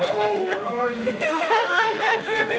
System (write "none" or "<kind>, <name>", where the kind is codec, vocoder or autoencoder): autoencoder, DAC-VAE